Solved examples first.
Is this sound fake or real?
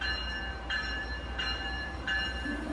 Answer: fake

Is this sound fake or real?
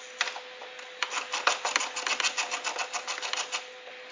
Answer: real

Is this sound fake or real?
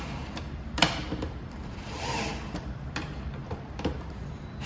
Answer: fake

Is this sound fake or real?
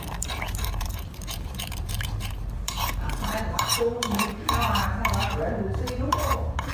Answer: fake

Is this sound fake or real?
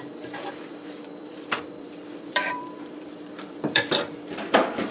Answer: fake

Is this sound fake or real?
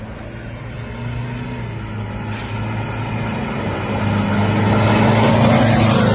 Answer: real